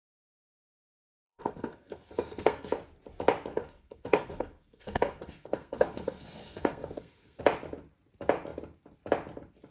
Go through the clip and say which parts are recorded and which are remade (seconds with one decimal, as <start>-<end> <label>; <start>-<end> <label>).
0.0-1.2 recorded; 1.2-2.7 remade; 2.7-3.5 recorded; 3.5-7.4 remade; 7.4-9.7 recorded